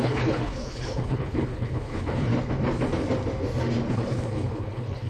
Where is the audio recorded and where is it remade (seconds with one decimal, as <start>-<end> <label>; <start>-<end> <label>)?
0.0-2.3 remade; 2.3-3.9 recorded; 3.9-5.1 remade